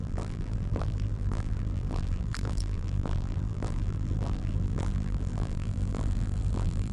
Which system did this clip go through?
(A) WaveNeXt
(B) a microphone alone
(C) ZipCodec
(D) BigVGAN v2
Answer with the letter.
D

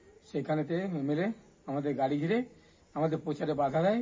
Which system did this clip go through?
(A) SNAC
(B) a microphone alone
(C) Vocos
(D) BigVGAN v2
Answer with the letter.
B